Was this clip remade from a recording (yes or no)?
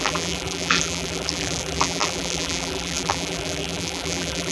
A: yes